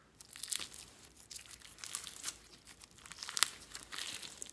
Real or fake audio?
real